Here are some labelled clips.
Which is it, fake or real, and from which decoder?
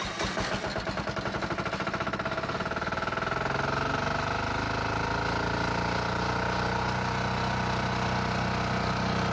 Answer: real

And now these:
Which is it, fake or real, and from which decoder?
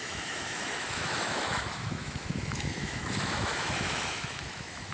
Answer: fake, autoencoder, DAC-VAE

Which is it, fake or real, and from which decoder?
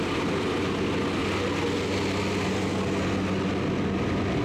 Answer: real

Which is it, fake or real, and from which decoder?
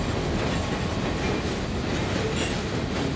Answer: real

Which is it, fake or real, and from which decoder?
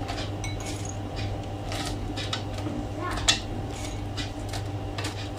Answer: real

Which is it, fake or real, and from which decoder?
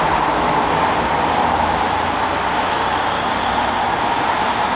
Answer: real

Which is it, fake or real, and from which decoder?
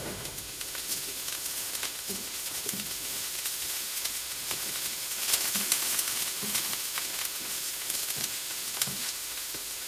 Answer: fake, autoencoder, DAC-VAE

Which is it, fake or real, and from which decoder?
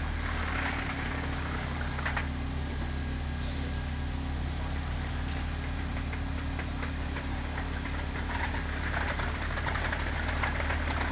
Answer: real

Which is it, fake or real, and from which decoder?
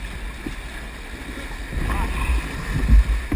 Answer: real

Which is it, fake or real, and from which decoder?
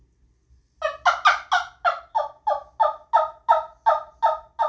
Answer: real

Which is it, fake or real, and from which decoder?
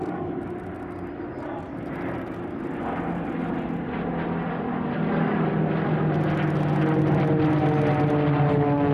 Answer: real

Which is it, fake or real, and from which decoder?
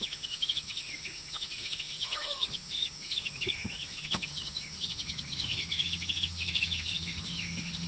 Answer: fake, autoencoder, DAC-VAE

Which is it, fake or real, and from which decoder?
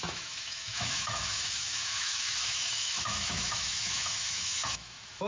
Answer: fake, autoencoder, DAC-VAE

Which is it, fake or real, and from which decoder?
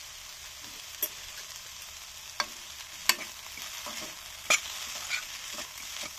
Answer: real